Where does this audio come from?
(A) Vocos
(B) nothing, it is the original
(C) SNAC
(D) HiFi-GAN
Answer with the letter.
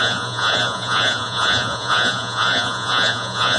A